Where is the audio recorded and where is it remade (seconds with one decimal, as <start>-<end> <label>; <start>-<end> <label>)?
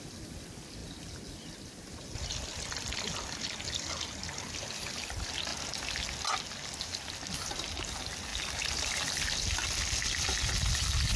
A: 0.0-11.2 recorded